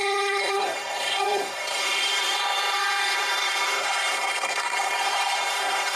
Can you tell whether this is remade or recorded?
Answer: remade